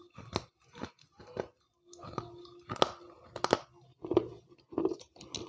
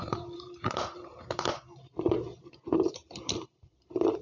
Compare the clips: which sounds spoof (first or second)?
second